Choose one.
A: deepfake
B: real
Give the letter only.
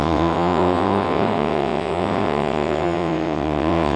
A